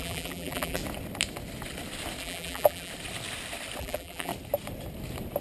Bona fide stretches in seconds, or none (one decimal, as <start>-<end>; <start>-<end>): 0.8-2.2; 2.9-3.8; 4.3-5.4